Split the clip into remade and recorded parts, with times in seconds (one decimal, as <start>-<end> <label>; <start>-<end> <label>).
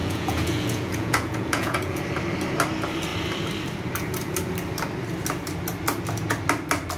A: 0.0-2.0 remade; 2.0-7.0 recorded